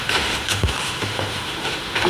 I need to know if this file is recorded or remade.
remade